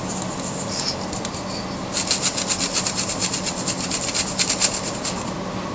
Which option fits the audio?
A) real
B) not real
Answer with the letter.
A